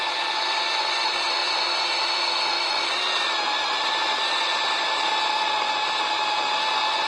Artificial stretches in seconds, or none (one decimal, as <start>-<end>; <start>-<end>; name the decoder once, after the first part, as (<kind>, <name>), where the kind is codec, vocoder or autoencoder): none